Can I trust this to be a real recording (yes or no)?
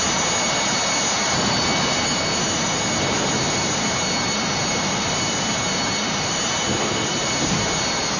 yes